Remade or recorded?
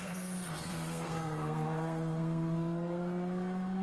remade